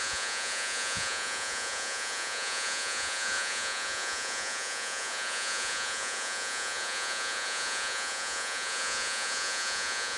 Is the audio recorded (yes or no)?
no